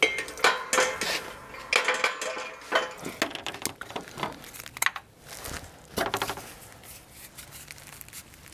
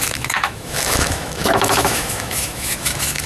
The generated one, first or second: second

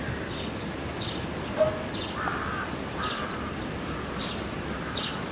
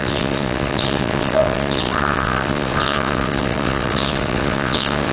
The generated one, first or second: second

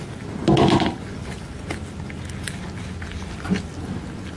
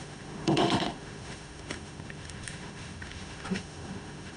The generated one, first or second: second